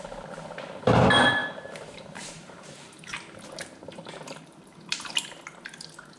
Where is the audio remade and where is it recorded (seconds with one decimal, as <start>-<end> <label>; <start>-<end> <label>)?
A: 0.0-1.4 recorded; 1.4-5.1 remade; 5.1-6.2 recorded